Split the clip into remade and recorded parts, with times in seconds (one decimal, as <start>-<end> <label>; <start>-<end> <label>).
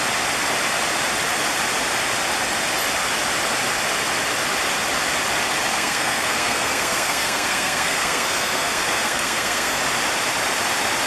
0.0-5.7 recorded; 5.7-9.8 remade; 9.8-11.1 recorded